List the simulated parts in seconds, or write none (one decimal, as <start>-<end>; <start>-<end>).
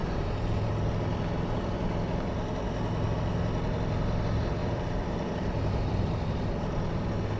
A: 0.0-0.7; 4.6-6.5